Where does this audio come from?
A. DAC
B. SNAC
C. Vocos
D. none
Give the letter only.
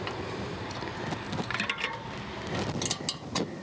D